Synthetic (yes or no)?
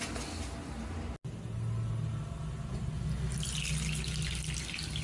no